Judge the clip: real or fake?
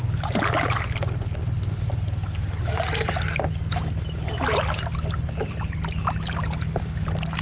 real